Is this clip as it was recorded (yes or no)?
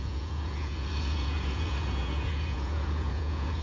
no